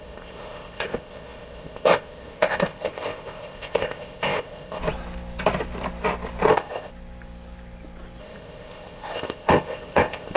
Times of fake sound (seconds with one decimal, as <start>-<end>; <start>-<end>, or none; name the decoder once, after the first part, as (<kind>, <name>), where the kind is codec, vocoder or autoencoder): 0.0-4.8 (codec, ZipCodec); 6.5-6.9; 8.2-10.4

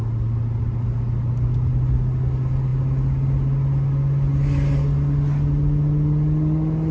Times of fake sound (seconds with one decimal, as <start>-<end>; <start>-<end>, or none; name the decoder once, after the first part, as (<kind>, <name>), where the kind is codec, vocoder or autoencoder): none

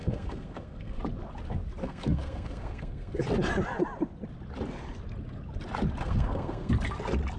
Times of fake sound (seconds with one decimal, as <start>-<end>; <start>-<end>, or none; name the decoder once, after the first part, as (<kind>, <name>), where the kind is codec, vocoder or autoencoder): 0.0-1.0 (codec, SNAC); 1.8-3.2; 6.0-6.7

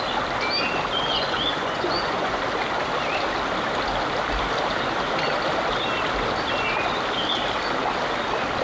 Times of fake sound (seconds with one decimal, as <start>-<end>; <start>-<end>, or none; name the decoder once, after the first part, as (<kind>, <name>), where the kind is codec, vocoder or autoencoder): 1.1-2.4 (vocoder, Vocos)

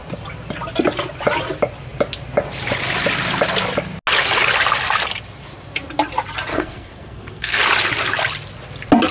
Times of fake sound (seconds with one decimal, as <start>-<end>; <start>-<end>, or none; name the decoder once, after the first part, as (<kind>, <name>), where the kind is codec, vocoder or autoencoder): 6.5-7.6 (codec, SNAC)